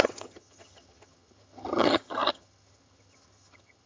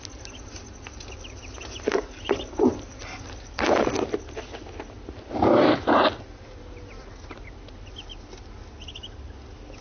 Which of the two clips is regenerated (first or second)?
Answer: first